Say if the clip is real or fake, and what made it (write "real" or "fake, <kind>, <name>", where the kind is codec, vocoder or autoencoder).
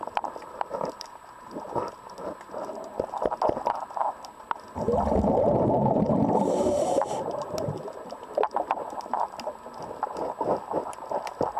real